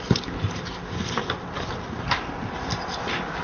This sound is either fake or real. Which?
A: real